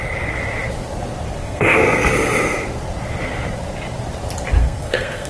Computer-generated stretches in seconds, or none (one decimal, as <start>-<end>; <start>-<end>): 1.4-2.1; 4.6-5.3